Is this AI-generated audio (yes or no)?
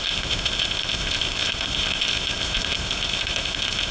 yes